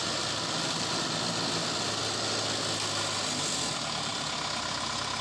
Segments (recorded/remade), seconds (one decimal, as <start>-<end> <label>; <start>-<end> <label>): 0.0-2.2 remade; 2.2-5.2 recorded